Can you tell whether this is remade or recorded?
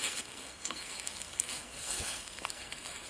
remade